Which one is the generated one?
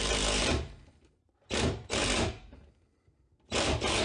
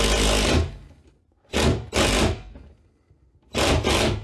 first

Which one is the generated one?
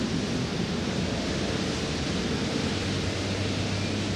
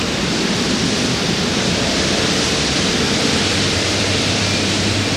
second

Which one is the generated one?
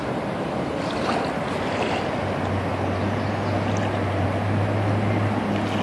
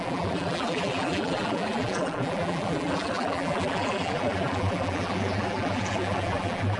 second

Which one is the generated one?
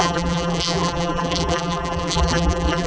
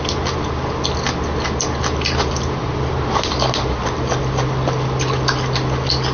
first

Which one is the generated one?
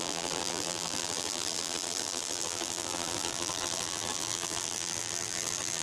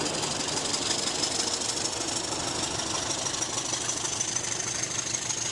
first